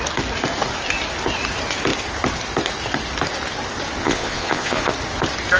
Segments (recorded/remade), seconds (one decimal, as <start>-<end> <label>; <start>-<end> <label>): 0.0-4.0 recorded; 4.0-4.9 remade; 4.9-5.6 recorded